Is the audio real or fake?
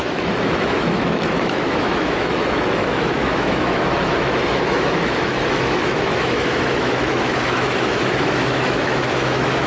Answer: fake